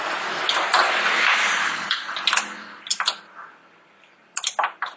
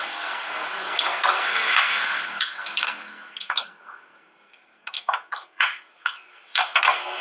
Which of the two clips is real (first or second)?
first